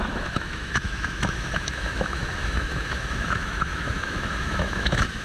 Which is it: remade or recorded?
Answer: remade